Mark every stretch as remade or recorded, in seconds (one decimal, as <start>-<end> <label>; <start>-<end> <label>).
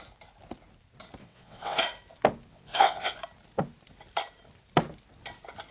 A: 0.0-1.2 recorded; 1.2-1.8 remade; 1.8-2.5 recorded; 2.5-3.1 remade; 3.1-5.7 recorded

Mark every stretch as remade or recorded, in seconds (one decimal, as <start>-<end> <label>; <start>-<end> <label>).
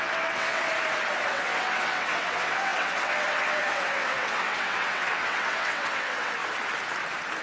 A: 0.0-0.7 remade; 0.7-1.3 recorded; 1.3-6.4 remade; 6.4-7.4 recorded